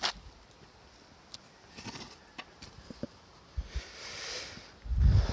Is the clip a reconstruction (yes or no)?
no